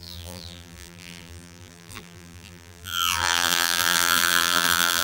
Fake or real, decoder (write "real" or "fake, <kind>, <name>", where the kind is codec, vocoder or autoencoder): fake, vocoder, BigVGAN v2